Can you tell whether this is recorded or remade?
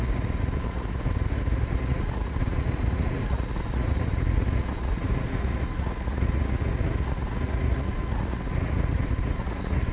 remade